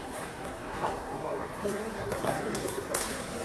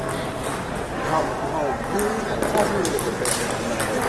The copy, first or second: first